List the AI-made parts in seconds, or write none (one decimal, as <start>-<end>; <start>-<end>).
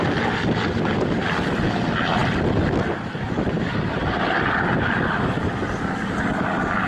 3.7-4.9